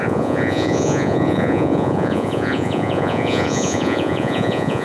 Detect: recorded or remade remade